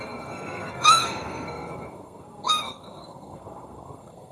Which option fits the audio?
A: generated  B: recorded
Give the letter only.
A